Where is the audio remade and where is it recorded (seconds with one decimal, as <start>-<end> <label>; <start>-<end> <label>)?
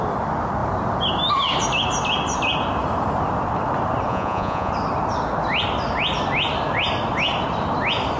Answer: 0.0-4.1 recorded; 4.1-4.7 remade; 4.7-8.2 recorded